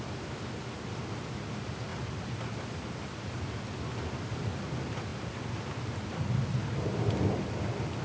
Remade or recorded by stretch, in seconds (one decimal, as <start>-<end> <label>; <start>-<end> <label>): 0.0-8.0 recorded